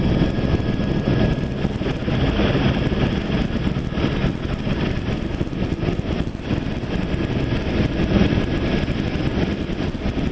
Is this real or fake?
real